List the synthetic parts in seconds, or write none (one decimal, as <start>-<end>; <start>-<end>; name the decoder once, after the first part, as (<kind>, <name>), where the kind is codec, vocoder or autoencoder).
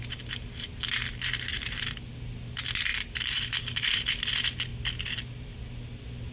none